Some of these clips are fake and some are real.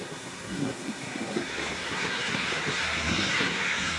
fake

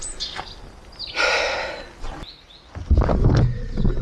real